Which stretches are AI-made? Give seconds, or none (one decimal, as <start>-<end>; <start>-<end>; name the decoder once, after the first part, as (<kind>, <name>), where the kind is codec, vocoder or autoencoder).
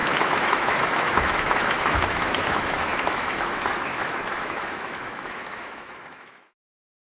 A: 0.0-7.0 (autoencoder, DAC-VAE)